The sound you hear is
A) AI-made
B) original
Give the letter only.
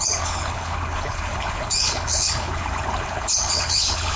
A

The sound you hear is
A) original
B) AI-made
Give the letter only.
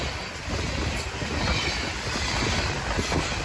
A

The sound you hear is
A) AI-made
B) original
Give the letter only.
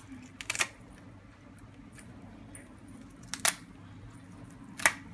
B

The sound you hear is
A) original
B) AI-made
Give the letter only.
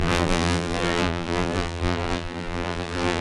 B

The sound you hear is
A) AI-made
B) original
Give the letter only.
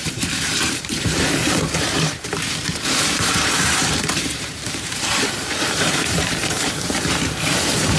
A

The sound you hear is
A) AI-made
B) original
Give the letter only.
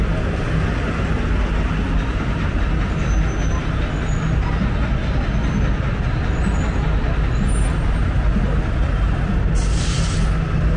B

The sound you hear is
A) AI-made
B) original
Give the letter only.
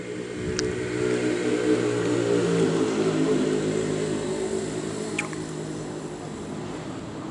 B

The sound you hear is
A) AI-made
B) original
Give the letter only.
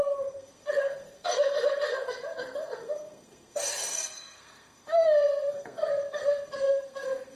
A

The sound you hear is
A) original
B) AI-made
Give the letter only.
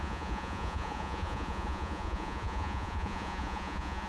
B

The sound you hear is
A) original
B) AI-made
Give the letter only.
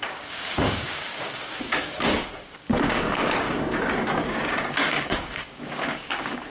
B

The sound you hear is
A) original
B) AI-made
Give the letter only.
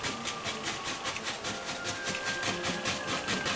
A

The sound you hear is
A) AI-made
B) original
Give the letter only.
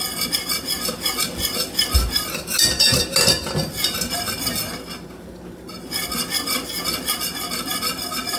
B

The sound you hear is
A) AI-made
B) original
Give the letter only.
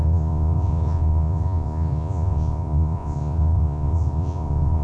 A